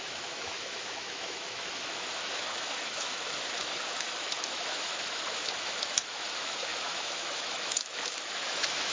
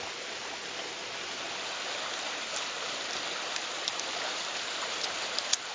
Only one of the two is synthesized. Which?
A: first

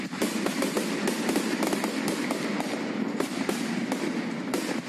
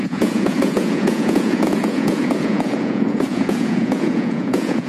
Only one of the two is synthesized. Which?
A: second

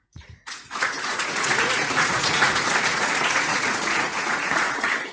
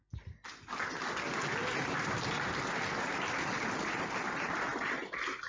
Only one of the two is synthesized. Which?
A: first